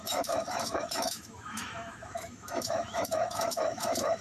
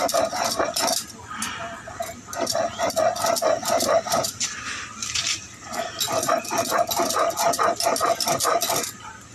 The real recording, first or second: second